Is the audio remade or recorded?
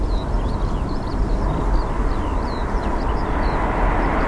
recorded